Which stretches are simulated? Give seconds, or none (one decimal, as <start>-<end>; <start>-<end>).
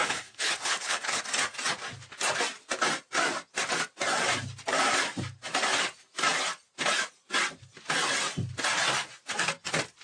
0.0-1.2